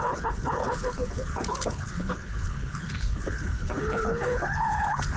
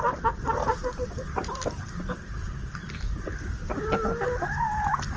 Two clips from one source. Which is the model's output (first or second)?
first